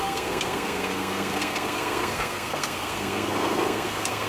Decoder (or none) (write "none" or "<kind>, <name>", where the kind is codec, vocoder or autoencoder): codec, SNAC